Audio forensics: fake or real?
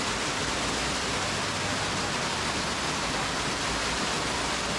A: real